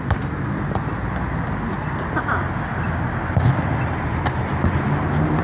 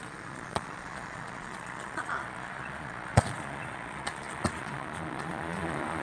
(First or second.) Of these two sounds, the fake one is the second